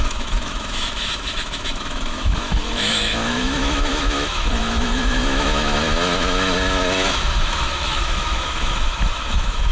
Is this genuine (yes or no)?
no